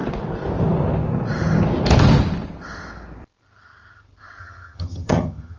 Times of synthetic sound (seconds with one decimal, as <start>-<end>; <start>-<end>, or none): 4.4-5.6